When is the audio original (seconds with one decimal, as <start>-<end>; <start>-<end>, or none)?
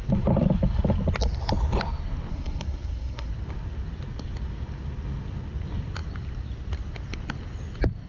0.0-2.3; 3.3-8.1